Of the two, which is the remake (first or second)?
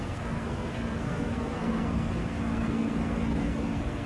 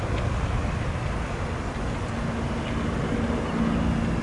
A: first